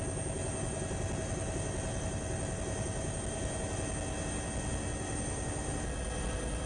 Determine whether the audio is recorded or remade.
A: recorded